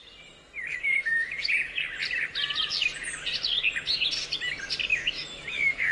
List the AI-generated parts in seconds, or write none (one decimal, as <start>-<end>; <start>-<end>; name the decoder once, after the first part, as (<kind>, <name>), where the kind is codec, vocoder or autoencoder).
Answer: 0.7-1.8 (autoencoder, DAC-VAE); 4.9-5.9